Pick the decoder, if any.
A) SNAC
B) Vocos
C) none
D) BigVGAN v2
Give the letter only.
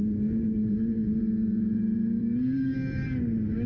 D